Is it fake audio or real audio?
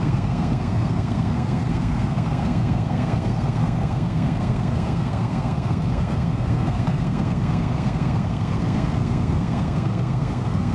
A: fake